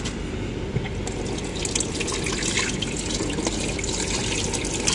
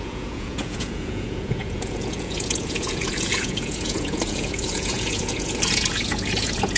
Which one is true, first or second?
first